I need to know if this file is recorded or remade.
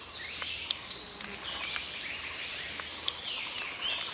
recorded